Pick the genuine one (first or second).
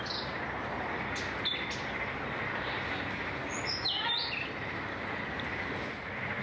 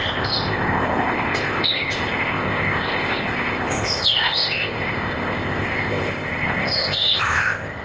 first